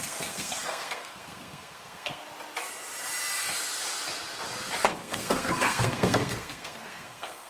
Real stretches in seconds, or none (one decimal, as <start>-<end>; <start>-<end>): 2.2-4.9